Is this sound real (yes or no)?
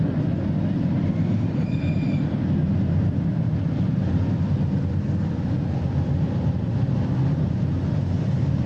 yes